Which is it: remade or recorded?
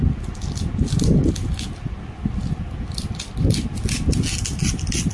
recorded